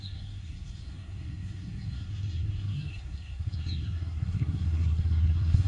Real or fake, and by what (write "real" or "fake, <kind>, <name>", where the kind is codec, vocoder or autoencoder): fake, codec, SNAC